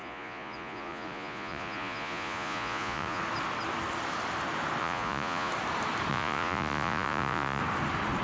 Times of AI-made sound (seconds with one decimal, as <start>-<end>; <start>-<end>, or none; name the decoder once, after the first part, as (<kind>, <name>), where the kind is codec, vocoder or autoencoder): 0.0-3.2 (vocoder, Vocos); 4.8-5.5; 6.1-7.6